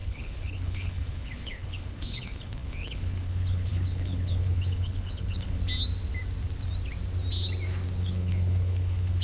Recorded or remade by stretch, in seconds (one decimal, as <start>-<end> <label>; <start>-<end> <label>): 0.0-5.6 remade; 5.6-8.0 recorded; 8.0-9.2 remade